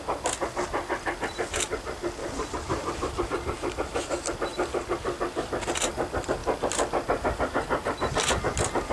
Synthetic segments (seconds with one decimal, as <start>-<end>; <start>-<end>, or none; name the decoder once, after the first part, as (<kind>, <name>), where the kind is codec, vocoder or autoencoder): 2.2-3.3 (vocoder, BigVGAN v2)